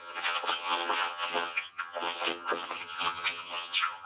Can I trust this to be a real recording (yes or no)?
no